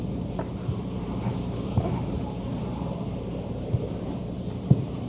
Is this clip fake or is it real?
fake